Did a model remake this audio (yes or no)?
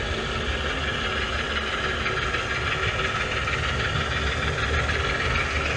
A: no